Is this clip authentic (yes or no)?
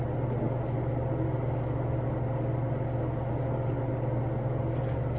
yes